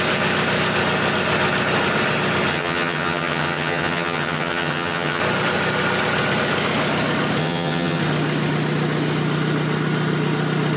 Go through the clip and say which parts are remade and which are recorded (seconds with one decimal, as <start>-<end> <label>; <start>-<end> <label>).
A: 0.0-2.5 recorded; 2.5-5.2 remade; 5.2-7.4 recorded; 7.4-8.0 remade; 8.0-10.8 recorded